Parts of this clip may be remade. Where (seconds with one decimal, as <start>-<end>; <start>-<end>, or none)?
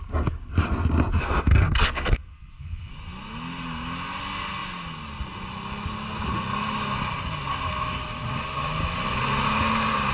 1.2-2.9